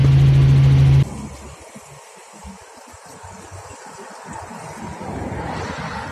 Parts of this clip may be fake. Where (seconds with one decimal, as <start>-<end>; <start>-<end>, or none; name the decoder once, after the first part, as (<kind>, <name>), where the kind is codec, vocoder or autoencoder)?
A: none

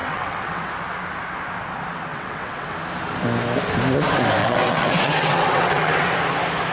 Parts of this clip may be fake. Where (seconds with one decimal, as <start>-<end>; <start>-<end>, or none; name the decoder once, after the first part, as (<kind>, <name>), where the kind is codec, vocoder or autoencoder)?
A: 0.0-0.7 (vocoder, WaveNeXt); 2.1-2.7; 4.4-6.1

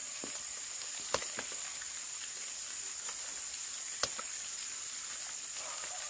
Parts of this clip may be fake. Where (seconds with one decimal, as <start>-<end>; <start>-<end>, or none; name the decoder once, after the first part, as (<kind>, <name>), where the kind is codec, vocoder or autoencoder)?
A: none

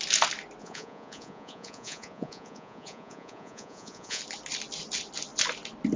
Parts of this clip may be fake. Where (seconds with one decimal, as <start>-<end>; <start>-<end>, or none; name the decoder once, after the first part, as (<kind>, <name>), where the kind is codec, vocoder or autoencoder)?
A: 0.6-4.2 (vocoder, Vocos)

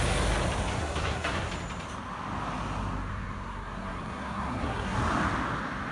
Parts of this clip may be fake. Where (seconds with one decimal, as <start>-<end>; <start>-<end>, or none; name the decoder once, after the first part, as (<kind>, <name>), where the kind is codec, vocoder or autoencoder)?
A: 0.7-1.5 (codec, SNAC); 3.1-5.0

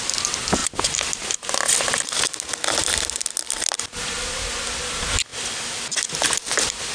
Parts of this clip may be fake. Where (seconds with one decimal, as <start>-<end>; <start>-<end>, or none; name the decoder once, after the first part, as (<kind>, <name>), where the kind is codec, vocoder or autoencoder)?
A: none

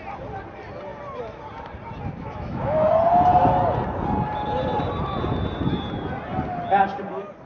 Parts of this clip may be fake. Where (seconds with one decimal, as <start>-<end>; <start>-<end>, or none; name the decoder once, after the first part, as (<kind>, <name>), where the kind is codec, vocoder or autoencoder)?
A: 2.2-2.9 (autoencoder, DAC-VAE)